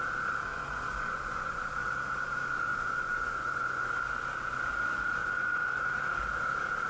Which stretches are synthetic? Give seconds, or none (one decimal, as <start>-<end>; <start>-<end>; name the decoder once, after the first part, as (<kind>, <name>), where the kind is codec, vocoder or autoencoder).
0.5-1.6 (vocoder, Vocos); 2.7-3.9; 5.2-6.0